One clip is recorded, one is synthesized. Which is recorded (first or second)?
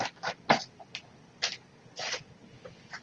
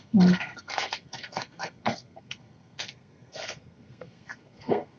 first